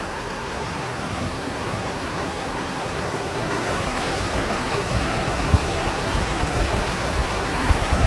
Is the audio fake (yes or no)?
yes